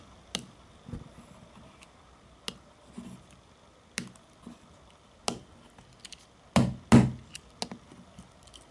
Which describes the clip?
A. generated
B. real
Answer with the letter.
B